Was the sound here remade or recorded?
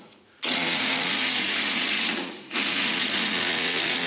remade